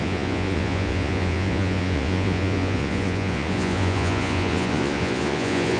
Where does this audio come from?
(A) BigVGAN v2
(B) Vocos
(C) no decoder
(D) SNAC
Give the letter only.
B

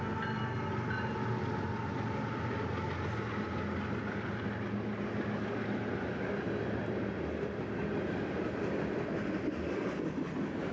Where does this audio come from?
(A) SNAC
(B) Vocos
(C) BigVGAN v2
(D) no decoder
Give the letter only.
D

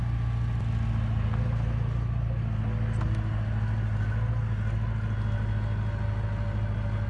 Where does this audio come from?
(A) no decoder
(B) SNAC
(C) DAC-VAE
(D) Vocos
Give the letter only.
A